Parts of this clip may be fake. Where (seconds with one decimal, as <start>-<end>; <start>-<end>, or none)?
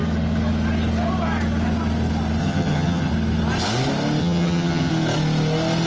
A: 2.4-3.1; 4.2-4.9